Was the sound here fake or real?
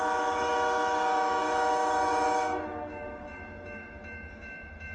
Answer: fake